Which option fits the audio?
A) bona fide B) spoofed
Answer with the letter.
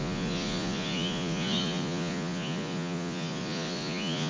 B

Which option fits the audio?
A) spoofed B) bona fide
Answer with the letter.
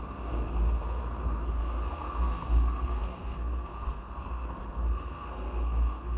A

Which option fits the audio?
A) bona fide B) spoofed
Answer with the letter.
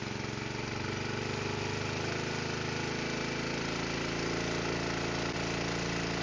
A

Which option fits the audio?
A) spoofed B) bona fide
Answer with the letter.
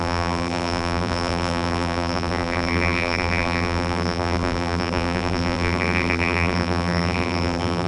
A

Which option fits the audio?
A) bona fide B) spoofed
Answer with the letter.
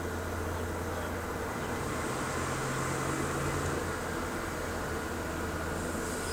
A